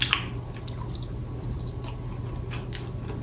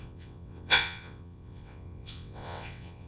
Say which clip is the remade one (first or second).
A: second